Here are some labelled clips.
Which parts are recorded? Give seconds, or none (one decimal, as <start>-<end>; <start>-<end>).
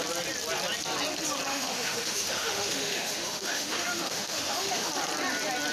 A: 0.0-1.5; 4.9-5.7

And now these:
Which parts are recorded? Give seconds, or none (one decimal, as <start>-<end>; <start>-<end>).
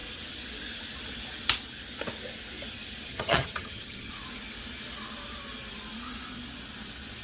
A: 0.0-3.1; 4.1-7.2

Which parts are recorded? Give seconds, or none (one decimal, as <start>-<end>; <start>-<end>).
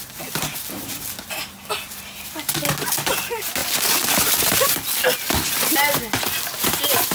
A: 0.0-7.1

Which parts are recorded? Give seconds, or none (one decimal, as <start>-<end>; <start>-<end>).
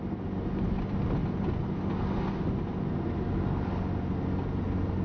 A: 0.0-5.0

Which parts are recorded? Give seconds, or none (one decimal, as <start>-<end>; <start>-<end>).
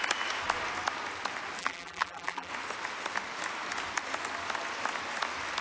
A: 0.0-1.6; 2.5-5.6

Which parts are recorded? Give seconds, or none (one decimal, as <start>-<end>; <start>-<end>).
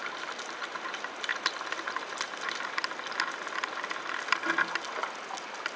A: 0.0-5.8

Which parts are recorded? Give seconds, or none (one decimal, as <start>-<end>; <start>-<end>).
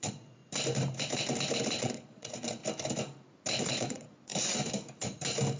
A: 0.4-1.7; 2.6-3.6; 4.3-5.6